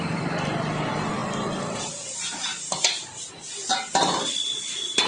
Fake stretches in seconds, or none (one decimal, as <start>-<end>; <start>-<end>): none

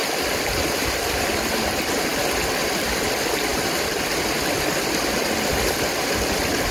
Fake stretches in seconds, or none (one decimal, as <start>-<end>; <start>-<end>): 0.0-1.5

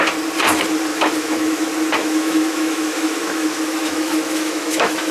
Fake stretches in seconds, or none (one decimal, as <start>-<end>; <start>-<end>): 0.9-1.6; 2.0-5.1

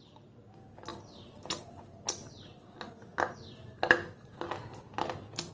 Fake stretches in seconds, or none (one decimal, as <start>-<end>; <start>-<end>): none

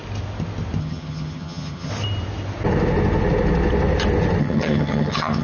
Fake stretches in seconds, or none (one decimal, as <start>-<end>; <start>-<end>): 0.8-1.9; 4.4-5.4